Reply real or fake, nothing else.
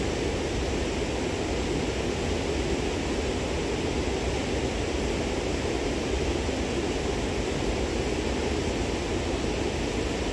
real